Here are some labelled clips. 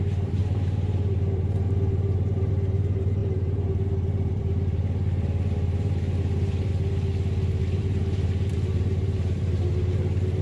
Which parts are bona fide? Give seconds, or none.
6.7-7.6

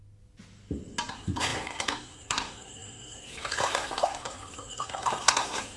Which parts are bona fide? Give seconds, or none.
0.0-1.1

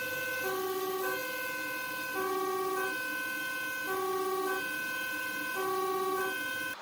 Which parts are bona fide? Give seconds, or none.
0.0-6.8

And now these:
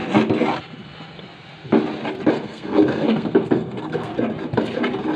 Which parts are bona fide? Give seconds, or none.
0.0-2.3; 4.1-5.2

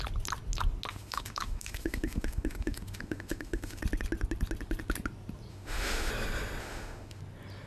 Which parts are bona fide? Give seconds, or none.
0.0-0.9; 3.8-5.5; 6.1-6.6; 7.2-7.7

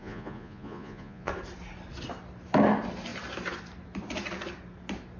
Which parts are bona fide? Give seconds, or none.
1.3-5.2